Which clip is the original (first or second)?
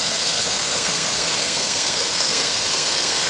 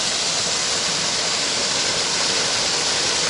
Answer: second